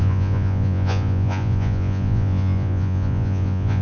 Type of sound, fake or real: fake